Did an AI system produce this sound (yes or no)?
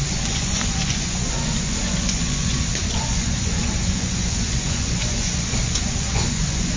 yes